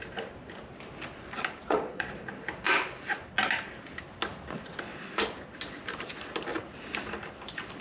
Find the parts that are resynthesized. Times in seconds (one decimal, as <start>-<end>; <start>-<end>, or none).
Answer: 1.6-2.1